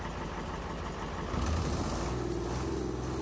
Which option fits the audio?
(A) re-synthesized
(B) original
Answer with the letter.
B